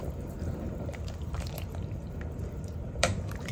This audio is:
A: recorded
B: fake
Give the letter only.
B